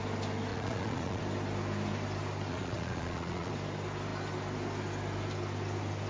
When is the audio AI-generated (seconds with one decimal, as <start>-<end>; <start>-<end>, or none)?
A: 0.5-1.2; 2.5-3.5